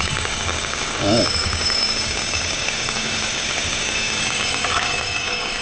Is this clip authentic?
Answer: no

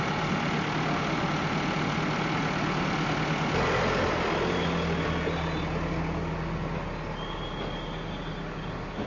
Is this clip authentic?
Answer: yes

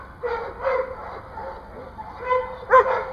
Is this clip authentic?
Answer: yes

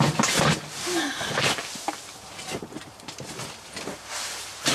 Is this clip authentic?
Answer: yes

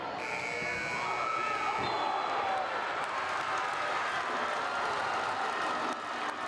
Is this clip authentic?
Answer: yes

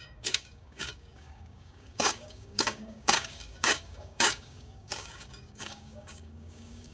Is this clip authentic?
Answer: no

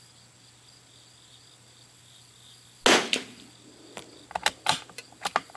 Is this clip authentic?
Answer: yes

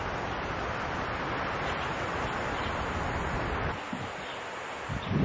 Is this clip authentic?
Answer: yes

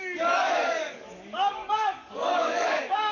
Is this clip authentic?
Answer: no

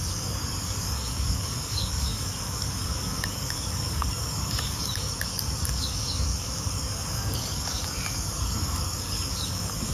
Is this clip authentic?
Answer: no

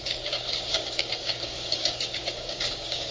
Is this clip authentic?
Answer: no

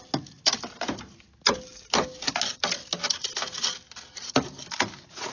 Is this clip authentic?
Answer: yes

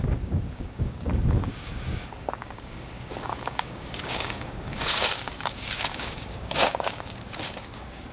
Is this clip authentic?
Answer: no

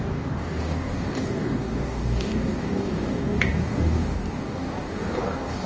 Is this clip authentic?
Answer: no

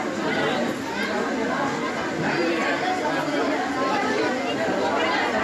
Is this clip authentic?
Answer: yes